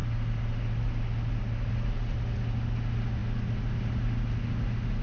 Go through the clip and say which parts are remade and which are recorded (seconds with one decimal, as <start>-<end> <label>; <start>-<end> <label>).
0.0-5.0 recorded